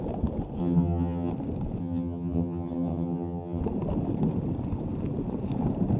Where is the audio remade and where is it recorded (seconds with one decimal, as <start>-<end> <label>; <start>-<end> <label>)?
0.0-0.6 recorded; 0.6-1.3 remade; 1.3-1.8 recorded; 1.8-3.6 remade; 3.6-6.0 recorded